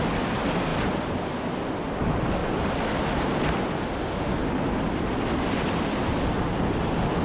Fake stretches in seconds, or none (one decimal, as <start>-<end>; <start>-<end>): none